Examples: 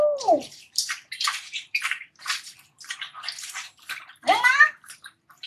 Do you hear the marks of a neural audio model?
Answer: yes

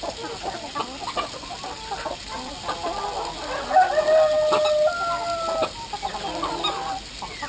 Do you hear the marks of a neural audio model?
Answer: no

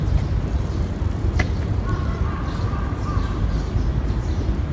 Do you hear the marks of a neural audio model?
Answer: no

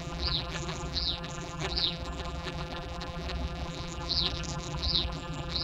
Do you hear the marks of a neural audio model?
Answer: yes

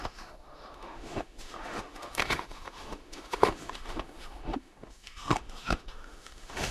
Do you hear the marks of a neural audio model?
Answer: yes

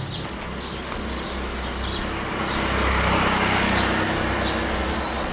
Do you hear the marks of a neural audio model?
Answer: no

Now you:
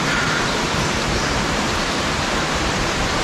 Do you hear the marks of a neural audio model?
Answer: yes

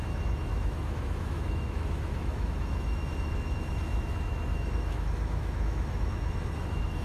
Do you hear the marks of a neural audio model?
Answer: yes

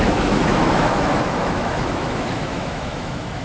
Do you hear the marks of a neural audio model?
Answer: yes